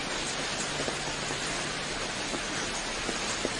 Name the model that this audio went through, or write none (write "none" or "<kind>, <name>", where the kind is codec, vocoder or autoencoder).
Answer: none